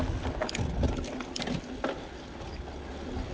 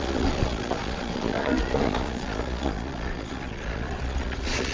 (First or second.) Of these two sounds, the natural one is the first